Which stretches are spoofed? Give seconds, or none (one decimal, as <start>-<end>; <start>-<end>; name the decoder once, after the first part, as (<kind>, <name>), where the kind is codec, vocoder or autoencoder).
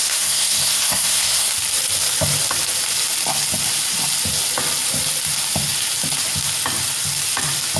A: 0.0-1.5 (codec, SNAC)